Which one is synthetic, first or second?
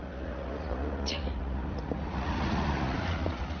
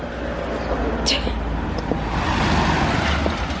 first